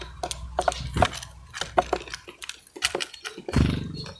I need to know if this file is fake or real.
real